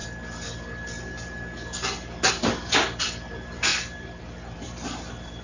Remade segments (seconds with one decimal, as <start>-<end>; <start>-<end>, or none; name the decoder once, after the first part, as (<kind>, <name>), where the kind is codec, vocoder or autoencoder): 2.3-5.4 (vocoder, BigVGAN v2)